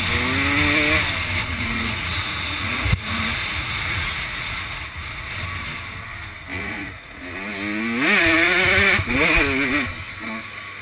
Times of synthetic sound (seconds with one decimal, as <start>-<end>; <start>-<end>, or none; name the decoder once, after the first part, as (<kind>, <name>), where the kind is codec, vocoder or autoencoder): 1.5-5.3 (vocoder, Vocos); 6.5-7.2